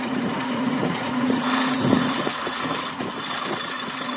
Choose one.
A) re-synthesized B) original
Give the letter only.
A